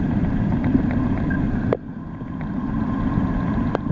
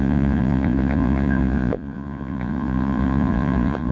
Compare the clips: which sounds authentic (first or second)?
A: first